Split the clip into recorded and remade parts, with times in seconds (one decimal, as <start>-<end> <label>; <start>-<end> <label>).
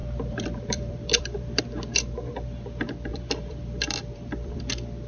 0.0-1.6 remade; 1.6-3.1 recorded; 3.1-4.6 remade; 4.6-5.1 recorded